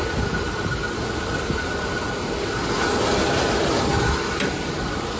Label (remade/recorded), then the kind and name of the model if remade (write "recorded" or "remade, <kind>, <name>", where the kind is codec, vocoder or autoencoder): recorded